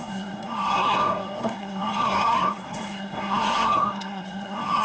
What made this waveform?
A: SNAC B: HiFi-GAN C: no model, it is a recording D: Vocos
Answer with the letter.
A